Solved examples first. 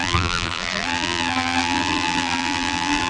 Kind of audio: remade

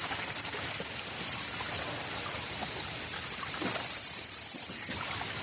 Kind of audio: recorded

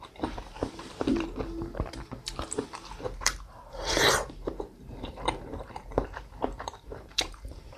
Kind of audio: remade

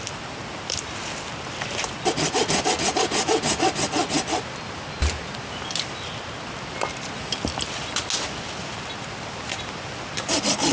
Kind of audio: recorded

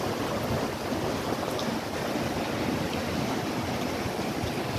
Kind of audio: recorded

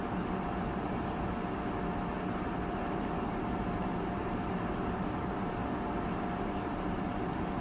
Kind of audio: recorded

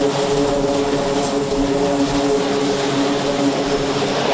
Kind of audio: recorded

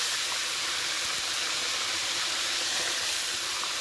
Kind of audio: remade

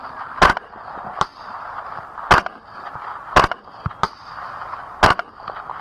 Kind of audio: recorded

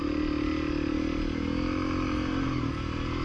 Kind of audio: recorded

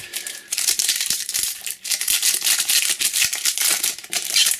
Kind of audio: remade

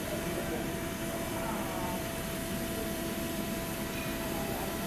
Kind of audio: remade